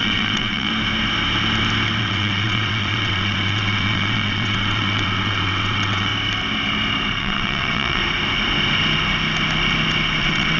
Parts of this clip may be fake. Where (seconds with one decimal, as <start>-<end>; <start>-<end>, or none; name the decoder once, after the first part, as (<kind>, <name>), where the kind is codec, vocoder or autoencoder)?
0.0-0.7 (vocoder, WaveNeXt); 2.0-6.1; 7.2-8.0; 10.2-10.6

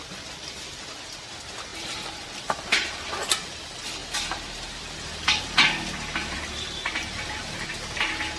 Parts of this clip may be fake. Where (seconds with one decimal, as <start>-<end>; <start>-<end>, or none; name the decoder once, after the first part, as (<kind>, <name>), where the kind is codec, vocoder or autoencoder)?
1.7-3.1 (vocoder, BigVGAN v2); 4.0-5.4; 6.2-7.7

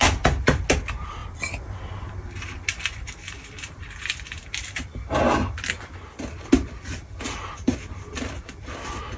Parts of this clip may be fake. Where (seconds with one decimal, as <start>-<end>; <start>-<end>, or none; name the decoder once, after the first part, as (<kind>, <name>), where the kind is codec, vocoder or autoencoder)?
1.2-1.8 (vocoder, BigVGAN v2)

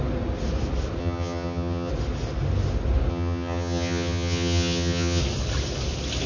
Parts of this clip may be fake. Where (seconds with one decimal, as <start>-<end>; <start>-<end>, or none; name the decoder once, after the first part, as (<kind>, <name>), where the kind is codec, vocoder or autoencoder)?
1.0-1.9 (vocoder, HiFi-GAN); 3.1-5.2

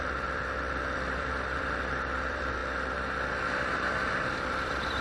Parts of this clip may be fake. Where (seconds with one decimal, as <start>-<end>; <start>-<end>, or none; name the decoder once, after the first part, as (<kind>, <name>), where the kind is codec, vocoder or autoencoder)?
0.0-2.6 (vocoder, BigVGAN v2); 4.4-5.0